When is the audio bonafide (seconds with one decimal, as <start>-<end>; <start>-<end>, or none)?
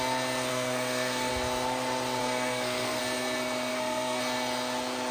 0.0-0.5; 1.3-2.2; 3.0-3.7; 4.2-5.1